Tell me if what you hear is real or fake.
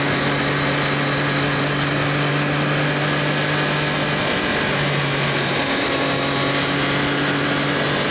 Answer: real